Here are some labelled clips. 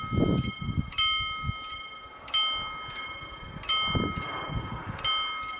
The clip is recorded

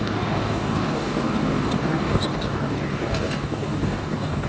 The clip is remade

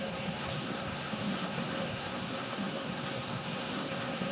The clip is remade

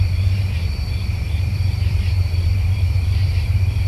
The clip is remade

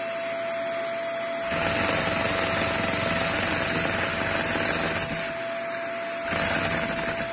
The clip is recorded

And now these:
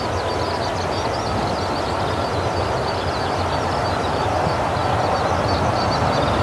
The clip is recorded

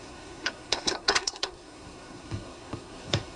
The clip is remade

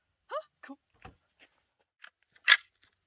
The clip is recorded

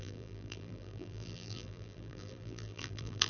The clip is remade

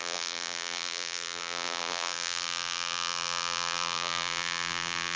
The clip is remade